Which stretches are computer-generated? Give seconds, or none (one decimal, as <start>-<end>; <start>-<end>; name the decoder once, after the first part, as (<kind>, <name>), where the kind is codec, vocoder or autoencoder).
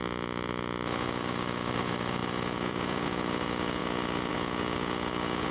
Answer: 0.0-5.5 (vocoder, Vocos)